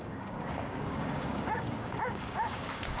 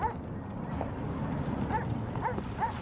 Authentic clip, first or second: second